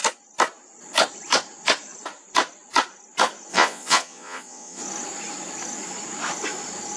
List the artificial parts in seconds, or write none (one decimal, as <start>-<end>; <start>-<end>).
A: 3.5-4.8